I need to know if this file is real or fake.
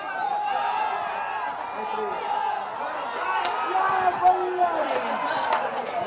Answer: real